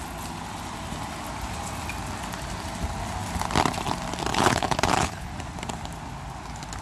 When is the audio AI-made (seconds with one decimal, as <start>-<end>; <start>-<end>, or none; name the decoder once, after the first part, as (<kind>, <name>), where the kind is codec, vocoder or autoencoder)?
4.3-5.3 (codec, HILCodec)